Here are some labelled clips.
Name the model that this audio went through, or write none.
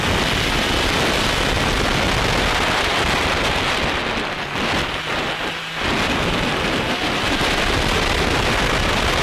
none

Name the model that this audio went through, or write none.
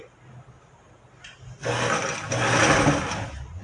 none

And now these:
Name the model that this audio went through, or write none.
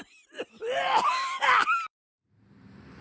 vocoder, BigVGAN v2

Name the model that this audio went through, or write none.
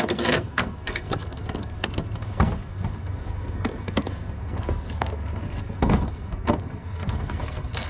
codec, SNAC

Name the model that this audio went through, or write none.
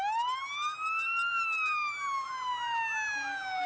none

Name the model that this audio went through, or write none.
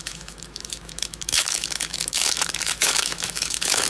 autoencoder, DAC-VAE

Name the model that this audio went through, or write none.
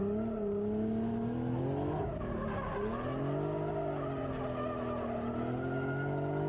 none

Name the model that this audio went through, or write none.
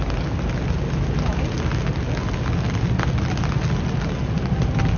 none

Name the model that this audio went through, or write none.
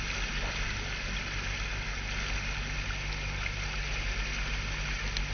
none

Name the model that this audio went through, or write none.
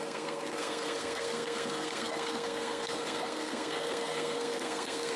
codec, SNAC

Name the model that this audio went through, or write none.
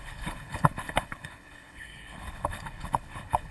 codec, HILCodec